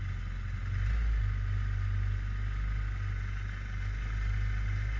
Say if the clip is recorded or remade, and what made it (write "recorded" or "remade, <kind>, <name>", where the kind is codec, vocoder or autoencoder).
recorded